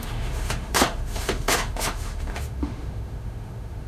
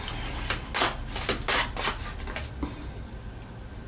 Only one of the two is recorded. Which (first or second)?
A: second